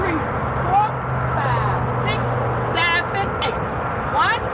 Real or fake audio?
real